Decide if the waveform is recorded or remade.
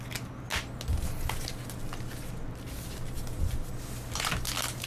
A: recorded